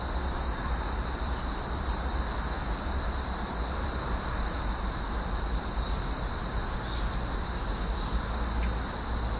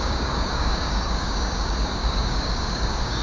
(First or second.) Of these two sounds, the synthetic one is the second